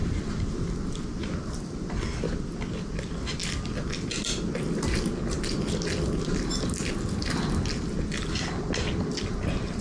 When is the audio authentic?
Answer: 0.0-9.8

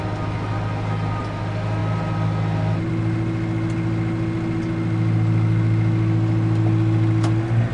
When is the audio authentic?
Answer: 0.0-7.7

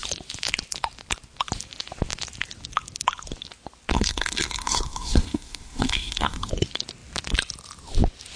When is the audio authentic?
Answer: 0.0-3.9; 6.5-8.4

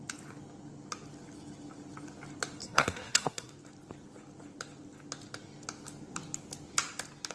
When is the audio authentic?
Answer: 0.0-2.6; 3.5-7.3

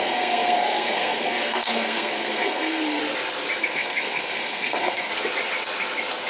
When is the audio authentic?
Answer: 3.0-3.6; 5.1-6.3

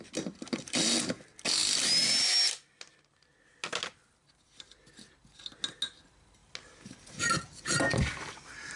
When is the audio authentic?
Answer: 0.0-8.8

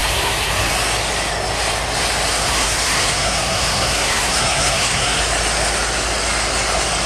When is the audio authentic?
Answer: 0.7-2.3; 5.2-7.1